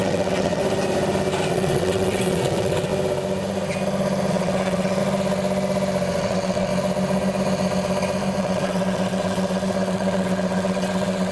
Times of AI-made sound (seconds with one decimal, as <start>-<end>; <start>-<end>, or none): 0.0-0.6; 1.5-2.9; 4.3-5.0; 6.2-6.7; 8.4-11.3